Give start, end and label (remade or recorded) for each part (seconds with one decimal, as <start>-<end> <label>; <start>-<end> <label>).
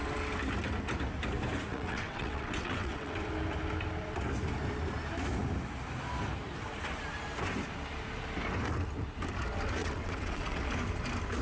0.0-1.7 recorded; 1.7-3.1 remade; 3.1-9.8 recorded; 9.8-10.6 remade; 10.6-11.4 recorded